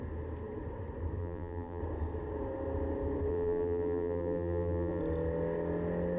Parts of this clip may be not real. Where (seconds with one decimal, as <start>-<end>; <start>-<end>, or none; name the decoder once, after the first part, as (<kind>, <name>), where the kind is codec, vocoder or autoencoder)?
1.2-1.8 (vocoder, BigVGAN v2); 3.3-5.0